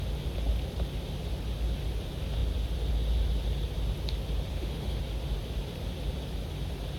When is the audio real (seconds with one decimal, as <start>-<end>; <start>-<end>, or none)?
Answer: 0.0-4.5; 5.0-7.0